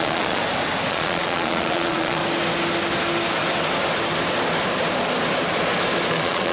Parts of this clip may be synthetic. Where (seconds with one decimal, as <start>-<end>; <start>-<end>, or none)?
0.0-0.4; 0.9-2.2; 6.1-6.5